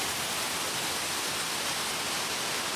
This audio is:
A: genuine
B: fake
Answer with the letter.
A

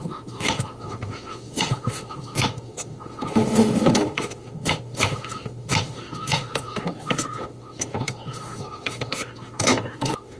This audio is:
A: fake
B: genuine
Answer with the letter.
A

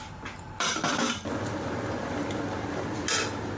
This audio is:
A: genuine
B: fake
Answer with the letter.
A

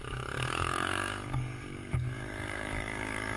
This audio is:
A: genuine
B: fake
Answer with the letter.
B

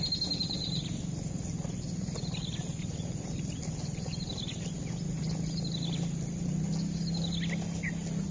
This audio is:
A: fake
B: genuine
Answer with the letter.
B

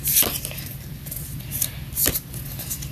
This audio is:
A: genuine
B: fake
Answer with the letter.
A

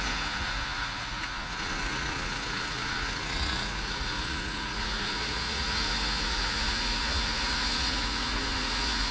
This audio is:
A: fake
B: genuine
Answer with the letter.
A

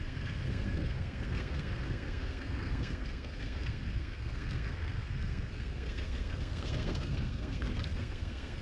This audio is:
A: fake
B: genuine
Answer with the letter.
A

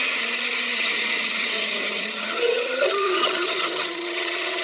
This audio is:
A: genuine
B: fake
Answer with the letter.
B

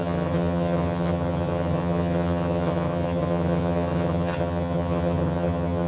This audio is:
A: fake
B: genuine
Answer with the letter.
A